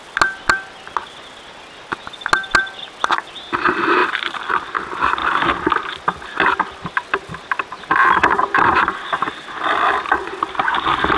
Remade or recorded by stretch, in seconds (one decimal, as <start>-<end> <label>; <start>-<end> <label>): 0.0-11.2 recorded

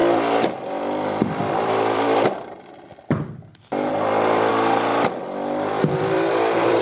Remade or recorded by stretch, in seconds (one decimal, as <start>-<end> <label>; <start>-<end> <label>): 0.0-4.5 remade; 4.5-5.2 recorded; 5.2-6.8 remade

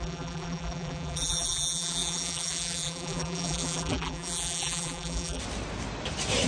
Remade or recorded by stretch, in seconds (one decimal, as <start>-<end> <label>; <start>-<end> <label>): 0.0-5.4 remade; 5.4-6.5 recorded